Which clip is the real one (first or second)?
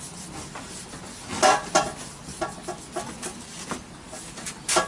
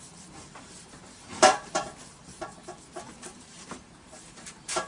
first